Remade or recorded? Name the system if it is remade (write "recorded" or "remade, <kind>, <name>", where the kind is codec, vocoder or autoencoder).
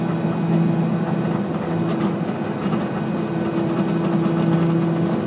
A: recorded